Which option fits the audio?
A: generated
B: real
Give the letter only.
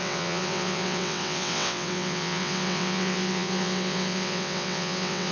A